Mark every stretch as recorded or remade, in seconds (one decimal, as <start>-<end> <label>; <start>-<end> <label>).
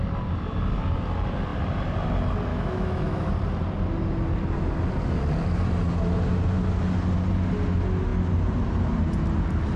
0.0-2.5 recorded; 2.5-3.3 remade; 3.3-9.8 recorded